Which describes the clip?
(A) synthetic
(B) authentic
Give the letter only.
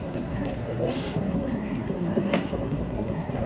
A